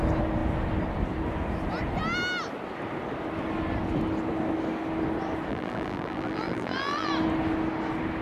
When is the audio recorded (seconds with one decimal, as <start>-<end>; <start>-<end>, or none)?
0.0-5.5; 7.1-8.2